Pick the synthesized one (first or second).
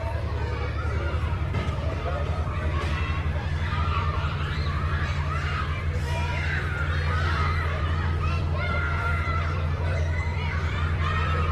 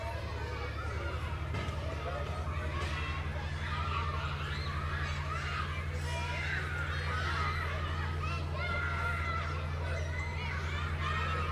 first